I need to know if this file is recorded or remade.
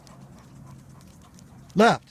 recorded